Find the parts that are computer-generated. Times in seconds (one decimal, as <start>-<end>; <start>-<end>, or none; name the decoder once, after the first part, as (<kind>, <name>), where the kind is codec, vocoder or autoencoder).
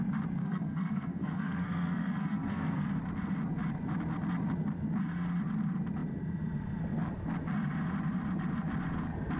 0.4-2.9 (codec, SNAC)